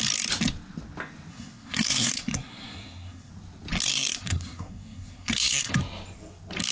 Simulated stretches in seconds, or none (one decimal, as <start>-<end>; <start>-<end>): 1.3-3.3; 3.8-5.7